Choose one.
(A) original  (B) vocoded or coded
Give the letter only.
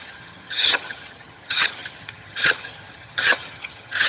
B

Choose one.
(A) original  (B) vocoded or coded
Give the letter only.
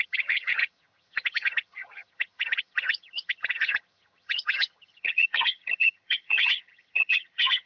B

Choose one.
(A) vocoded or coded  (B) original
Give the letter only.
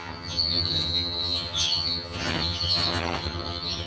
A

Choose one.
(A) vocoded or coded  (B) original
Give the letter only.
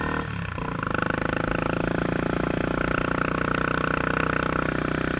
B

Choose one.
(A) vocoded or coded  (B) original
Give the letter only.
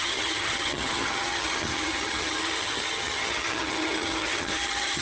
A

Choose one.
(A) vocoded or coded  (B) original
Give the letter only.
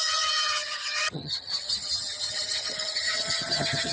A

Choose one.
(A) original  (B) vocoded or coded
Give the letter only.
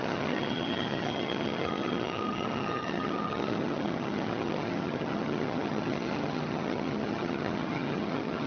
B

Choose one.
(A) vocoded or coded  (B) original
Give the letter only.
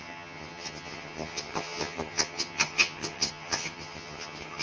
A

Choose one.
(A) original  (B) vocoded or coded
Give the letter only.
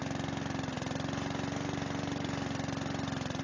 A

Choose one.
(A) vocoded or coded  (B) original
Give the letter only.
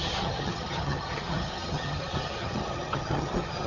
A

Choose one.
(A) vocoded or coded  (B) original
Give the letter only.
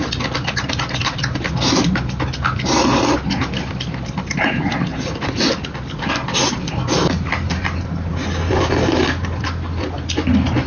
B